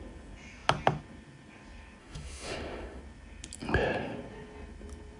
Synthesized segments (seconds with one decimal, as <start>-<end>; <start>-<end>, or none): 2.0-3.0